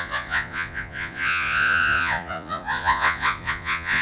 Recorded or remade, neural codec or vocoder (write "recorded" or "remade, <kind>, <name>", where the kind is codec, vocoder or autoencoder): remade, vocoder, Vocos